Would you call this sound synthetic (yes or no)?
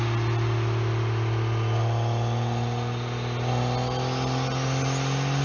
no